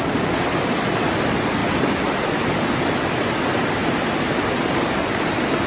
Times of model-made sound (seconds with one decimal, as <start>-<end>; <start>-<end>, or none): none